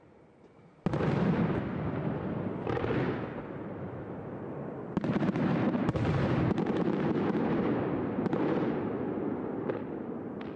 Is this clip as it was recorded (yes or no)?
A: yes